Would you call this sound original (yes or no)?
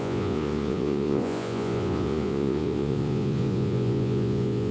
no